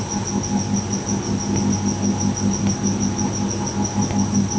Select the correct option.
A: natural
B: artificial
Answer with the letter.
A